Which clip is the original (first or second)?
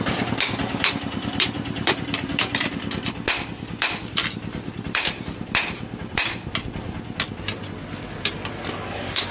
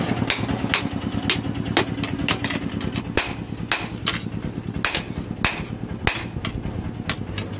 second